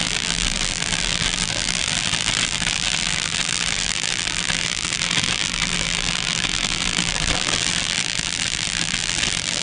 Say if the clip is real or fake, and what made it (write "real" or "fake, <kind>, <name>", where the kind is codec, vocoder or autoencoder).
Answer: fake, vocoder, BigVGAN v2